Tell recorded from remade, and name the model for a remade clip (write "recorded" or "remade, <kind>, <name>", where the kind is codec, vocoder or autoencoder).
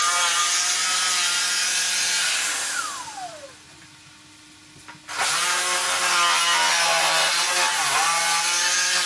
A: recorded